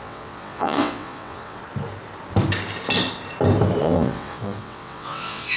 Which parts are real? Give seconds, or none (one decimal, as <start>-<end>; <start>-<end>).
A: 1.6-3.8